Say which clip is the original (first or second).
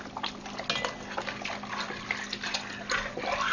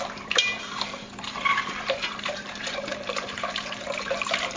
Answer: first